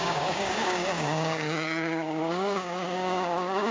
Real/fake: fake